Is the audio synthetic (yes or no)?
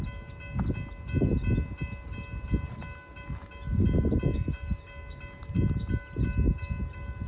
no